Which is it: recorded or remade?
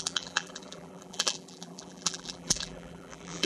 remade